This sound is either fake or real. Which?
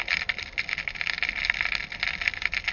real